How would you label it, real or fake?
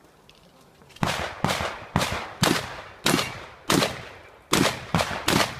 real